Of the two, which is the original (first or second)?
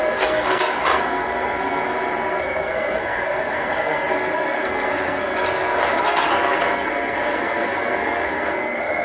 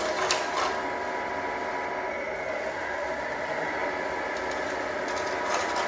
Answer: second